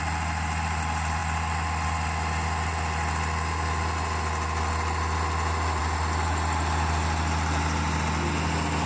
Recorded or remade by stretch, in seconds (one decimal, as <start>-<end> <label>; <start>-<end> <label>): 0.0-8.9 recorded